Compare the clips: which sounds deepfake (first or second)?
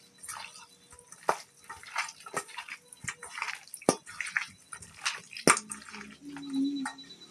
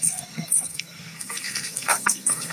second